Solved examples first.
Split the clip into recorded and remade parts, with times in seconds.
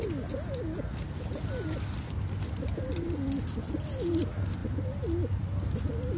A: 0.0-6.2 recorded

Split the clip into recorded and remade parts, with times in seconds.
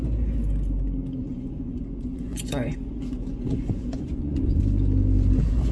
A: 0.0-1.2 recorded; 1.2-4.6 remade; 4.6-5.7 recorded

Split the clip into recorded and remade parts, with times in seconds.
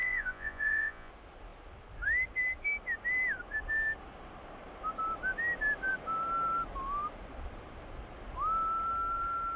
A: 0.0-1.1 remade; 1.1-9.6 recorded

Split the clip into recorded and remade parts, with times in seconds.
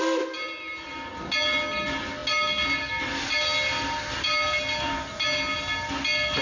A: 0.0-6.4 recorded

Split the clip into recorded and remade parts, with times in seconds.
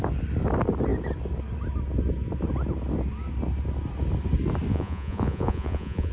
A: 0.0-4.7 recorded; 4.7-6.1 remade